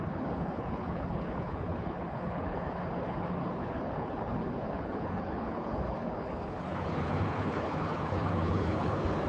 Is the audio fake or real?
fake